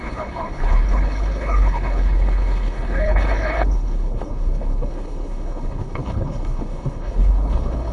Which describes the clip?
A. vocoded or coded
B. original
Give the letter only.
A